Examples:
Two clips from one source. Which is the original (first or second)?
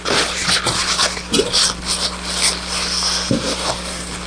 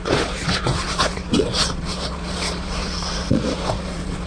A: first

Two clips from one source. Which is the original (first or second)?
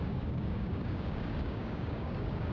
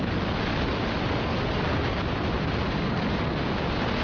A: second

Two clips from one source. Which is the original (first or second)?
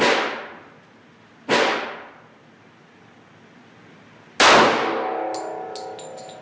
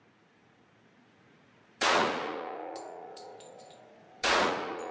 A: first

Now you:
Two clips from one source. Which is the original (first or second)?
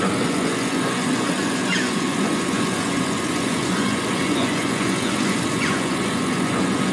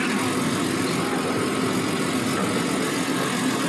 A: second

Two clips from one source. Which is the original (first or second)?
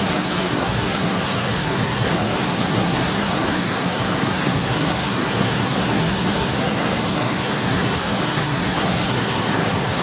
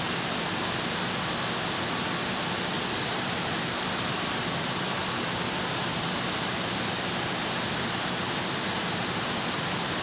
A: second